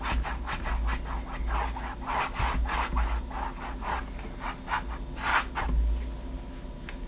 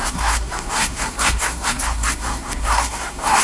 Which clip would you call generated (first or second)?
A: second